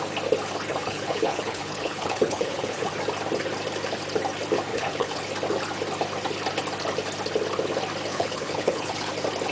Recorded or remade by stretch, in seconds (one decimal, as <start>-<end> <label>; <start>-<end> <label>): 0.0-0.7 recorded; 0.7-2.9 remade; 2.9-4.7 recorded; 4.7-5.2 remade; 5.2-8.1 recorded; 8.1-9.1 remade; 9.1-9.5 recorded

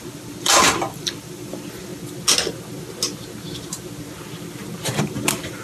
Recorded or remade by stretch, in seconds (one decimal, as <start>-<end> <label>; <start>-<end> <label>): 0.0-1.9 remade; 1.9-5.0 recorded; 5.0-5.6 remade

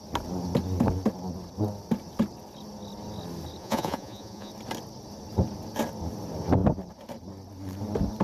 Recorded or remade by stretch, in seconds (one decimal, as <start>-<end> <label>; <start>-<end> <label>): 0.0-3.6 recorded; 3.6-4.5 remade; 4.5-8.2 recorded

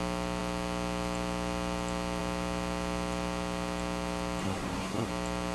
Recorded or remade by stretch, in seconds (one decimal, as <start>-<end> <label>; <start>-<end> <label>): 0.0-4.4 recorded; 4.4-5.1 remade; 5.1-5.5 recorded

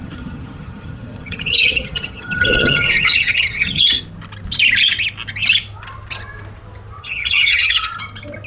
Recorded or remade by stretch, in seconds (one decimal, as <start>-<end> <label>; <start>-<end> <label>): 0.0-4.0 remade; 4.0-7.0 recorded; 7.0-7.9 remade; 7.9-8.5 recorded